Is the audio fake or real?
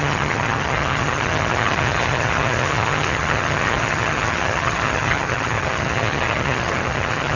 fake